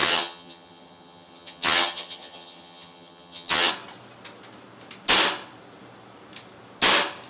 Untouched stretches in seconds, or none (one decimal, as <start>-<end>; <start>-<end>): 3.7-7.3